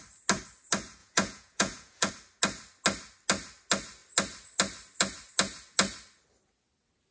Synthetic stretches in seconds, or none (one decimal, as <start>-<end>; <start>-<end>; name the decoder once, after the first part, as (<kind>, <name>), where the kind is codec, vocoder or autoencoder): 1.0-2.1 (vocoder, Vocos)